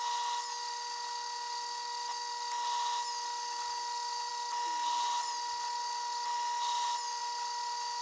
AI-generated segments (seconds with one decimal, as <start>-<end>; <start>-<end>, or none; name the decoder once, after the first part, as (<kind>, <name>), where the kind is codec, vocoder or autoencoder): none